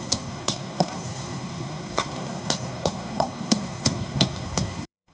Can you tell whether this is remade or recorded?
remade